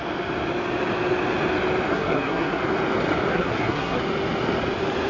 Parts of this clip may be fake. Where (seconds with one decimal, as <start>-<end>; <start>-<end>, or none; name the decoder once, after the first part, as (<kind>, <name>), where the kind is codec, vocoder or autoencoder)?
1.9-2.6 (codec, SNAC); 3.3-4.0